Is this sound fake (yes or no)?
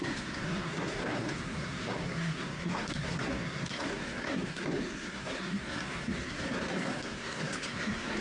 yes